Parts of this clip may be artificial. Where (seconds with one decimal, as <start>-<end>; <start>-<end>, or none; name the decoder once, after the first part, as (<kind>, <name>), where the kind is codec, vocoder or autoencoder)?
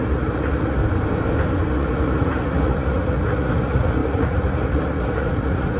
0.0-0.8 (vocoder, Vocos); 1.7-5.8